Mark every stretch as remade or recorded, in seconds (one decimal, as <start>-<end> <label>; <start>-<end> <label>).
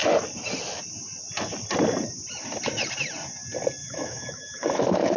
0.0-3.8 recorded; 3.8-5.2 remade